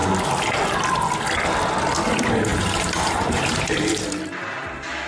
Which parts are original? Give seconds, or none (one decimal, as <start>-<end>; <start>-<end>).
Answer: 0.0-2.5; 4.0-5.1